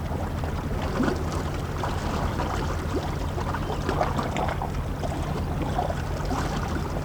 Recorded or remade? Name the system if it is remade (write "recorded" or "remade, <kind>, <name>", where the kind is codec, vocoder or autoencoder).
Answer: recorded